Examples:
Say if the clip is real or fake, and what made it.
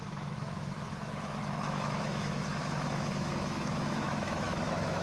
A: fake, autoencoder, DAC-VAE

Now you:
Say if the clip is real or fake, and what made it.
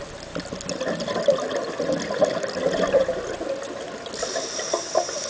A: real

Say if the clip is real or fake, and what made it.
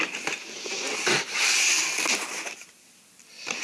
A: real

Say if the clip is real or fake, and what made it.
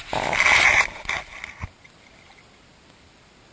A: real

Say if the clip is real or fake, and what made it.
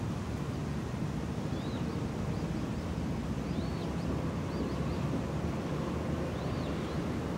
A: real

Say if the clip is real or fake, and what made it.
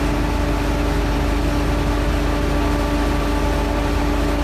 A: real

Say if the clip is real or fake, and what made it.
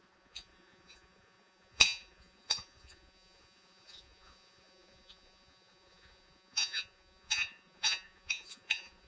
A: fake, vocoder, Vocos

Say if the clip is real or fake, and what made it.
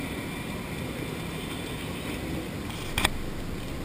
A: real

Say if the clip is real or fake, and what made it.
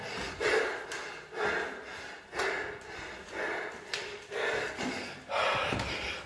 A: real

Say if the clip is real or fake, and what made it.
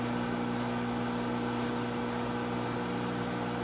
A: real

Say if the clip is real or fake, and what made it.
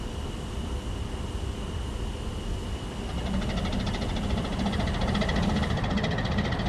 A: real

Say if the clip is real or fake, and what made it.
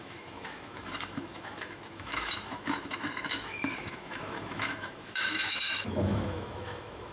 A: fake, autoencoder, DAC-VAE